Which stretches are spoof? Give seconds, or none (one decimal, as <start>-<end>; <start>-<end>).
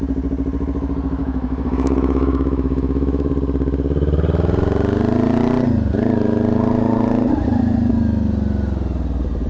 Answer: 1.2-3.3